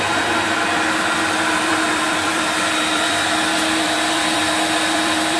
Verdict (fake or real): fake